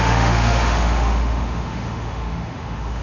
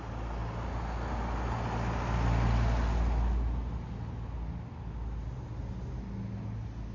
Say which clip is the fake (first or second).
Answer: first